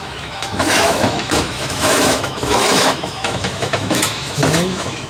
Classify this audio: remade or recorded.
remade